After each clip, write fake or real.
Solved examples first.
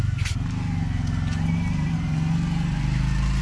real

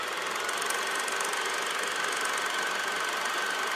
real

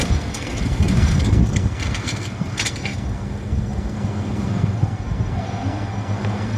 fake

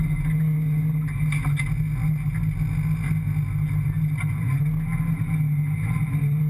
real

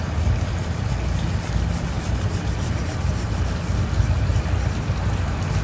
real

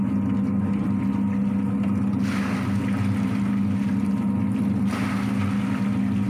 real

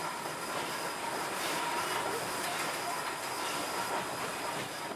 real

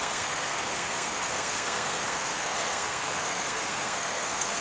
fake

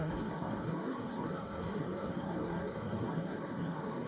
fake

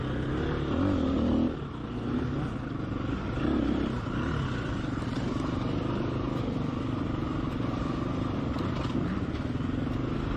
real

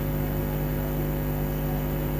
real